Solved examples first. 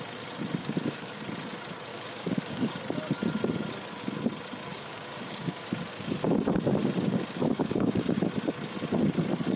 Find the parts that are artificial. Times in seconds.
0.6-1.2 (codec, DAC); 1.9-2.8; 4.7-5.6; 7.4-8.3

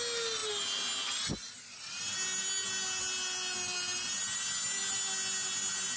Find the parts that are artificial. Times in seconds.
none

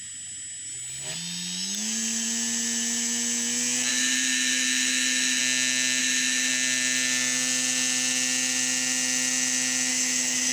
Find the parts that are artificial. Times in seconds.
3.9-5.4 (autoencoder, DAC-VAE); 6.0-6.5; 9.9-10.5

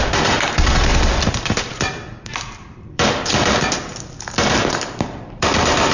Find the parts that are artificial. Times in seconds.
0.0-5.9 (vocoder, BigVGAN v2)

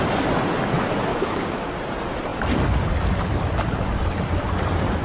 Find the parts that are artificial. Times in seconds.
1.1-1.7 (codec, DAC)

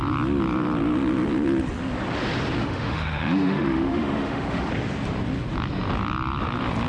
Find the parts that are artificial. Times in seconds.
2.6-4.7 (autoencoder, DAC-VAE)